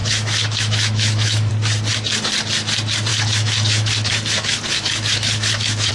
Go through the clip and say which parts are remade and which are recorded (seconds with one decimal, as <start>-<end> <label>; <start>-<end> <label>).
0.0-1.5 remade; 1.5-3.1 recorded; 3.1-5.9 remade